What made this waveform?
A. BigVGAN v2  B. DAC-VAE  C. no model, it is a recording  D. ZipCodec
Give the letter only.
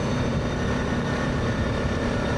A